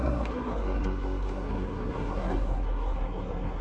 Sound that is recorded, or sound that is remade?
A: remade